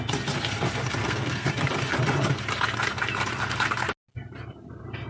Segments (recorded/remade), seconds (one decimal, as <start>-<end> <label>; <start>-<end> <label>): 0.0-1.0 recorded; 1.0-1.5 remade; 1.5-5.1 recorded